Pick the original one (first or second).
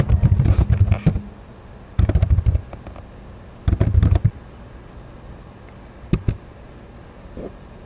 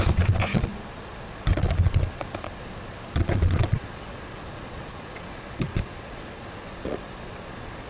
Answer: first